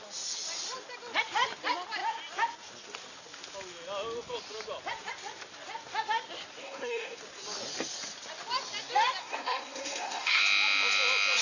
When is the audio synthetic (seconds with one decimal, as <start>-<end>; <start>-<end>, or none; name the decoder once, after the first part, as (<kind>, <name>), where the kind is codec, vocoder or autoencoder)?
6.6-7.2 (codec, SNAC); 9.2-10.4